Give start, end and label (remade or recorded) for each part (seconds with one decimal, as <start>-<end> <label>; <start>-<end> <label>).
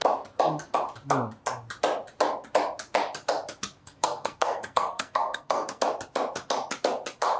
0.0-3.8 recorded; 3.8-5.8 remade; 5.8-7.4 recorded